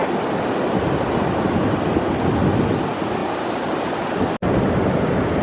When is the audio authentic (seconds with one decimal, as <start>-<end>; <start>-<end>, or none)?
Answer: 0.0-5.4